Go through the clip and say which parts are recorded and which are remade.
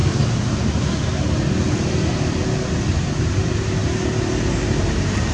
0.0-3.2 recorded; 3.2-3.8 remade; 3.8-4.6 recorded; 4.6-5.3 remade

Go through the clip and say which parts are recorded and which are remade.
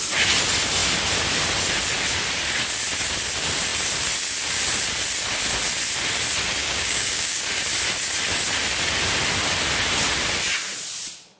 0.0-6.6 recorded; 6.6-7.4 remade; 7.4-11.4 recorded